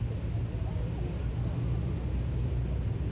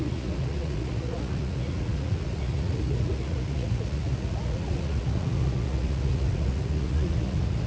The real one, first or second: first